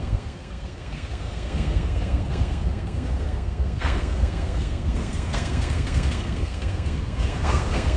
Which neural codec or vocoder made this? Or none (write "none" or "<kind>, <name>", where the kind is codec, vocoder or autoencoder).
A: codec, SNAC